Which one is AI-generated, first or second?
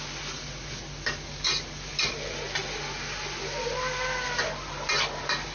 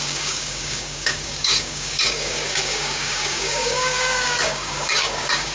second